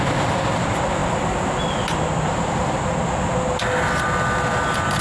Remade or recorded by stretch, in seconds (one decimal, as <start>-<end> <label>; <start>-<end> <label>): 0.0-5.0 recorded

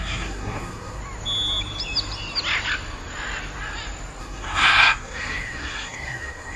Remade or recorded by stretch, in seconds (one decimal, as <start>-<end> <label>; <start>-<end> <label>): 0.0-1.0 remade; 1.0-4.2 recorded; 4.2-6.6 remade